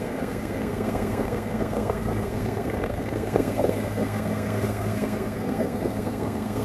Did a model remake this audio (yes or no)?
yes